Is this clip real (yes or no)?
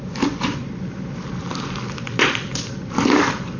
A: no